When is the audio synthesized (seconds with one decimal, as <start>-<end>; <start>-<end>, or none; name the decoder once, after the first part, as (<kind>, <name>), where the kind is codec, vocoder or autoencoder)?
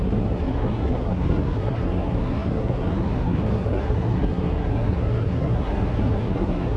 0.0-6.8 (codec, SNAC)